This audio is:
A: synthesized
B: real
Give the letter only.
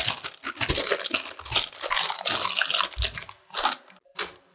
B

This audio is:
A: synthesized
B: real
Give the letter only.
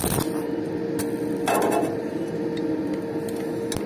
B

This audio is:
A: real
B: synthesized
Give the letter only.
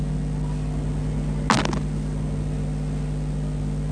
A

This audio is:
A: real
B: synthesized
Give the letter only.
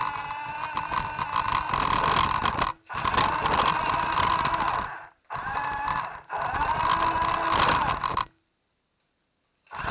A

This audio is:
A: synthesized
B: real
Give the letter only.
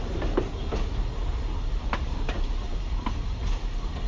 B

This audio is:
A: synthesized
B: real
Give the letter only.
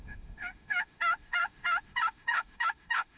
A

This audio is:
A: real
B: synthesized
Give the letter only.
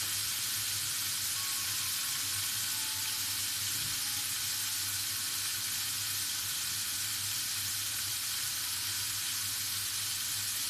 A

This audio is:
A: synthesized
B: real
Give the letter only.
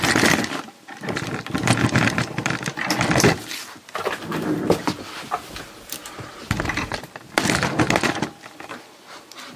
B